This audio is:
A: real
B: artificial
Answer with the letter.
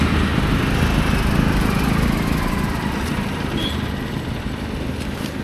A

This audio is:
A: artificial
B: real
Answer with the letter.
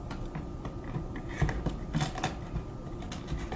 B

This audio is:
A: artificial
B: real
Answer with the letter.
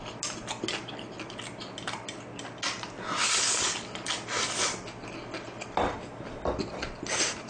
B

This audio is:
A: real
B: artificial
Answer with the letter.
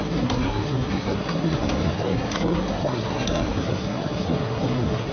B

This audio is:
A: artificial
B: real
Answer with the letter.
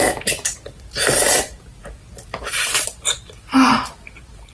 B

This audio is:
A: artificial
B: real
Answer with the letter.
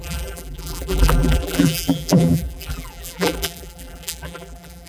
A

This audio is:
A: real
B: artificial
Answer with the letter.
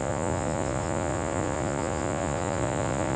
B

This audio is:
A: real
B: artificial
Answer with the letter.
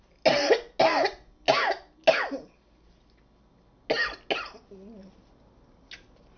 A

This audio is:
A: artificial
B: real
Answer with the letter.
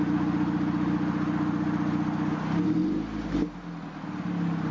B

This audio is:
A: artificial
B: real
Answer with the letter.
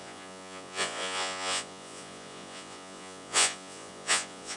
A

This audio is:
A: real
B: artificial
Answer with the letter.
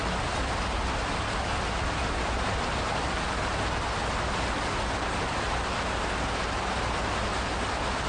A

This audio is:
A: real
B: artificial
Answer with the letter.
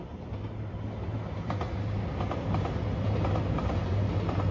A